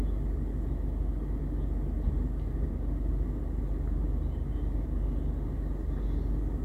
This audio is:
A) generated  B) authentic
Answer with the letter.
B